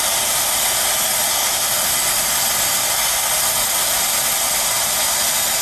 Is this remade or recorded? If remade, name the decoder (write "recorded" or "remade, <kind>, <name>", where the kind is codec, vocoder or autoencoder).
recorded